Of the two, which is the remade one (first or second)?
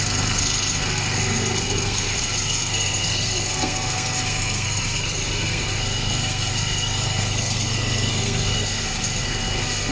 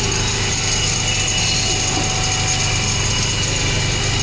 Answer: first